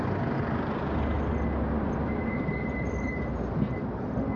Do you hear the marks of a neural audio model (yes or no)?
no